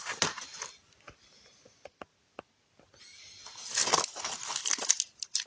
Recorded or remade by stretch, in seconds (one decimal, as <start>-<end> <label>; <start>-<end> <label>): 0.0-5.5 recorded